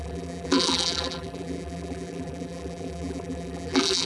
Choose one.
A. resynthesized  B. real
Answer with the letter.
A